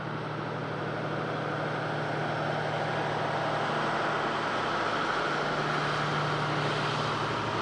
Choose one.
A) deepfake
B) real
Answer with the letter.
B